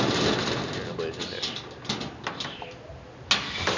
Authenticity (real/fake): real